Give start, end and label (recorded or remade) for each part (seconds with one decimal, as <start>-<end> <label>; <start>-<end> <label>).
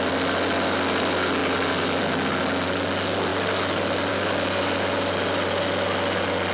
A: 0.0-6.5 recorded